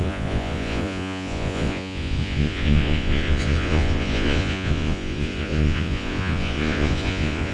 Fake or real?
fake